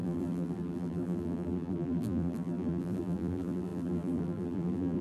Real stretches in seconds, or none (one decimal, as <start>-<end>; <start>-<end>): none